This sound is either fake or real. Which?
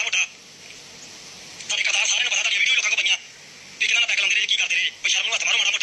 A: real